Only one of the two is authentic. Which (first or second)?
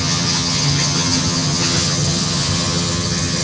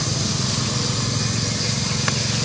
second